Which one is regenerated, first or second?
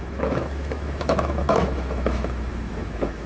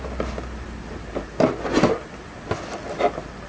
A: first